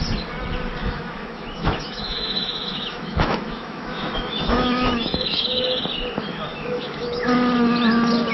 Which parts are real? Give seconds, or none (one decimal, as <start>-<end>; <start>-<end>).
0.0-0.8; 5.8-6.5; 7.2-8.3

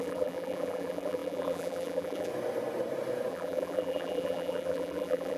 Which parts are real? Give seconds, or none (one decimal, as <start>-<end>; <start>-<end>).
2.3-3.3

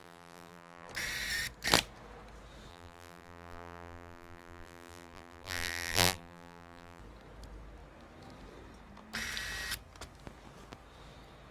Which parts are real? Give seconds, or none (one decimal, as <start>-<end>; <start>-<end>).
0.9-2.7; 7.0-11.5

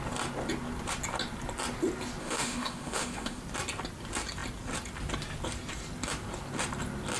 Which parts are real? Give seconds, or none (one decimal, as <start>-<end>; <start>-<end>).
0.0-2.2; 3.4-7.2

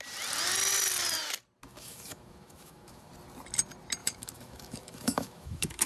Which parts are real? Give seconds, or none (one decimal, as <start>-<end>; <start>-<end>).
0.0-1.7; 3.1-4.0

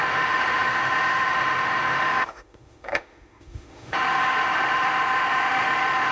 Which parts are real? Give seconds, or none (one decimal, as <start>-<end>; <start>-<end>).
none

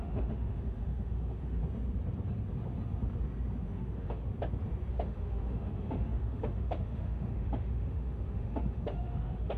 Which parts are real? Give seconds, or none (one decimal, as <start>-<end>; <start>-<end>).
1.6-3.6; 4.2-4.9

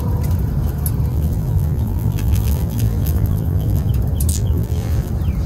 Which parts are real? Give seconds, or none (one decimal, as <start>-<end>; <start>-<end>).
0.0-1.1; 3.9-4.3; 5.1-5.5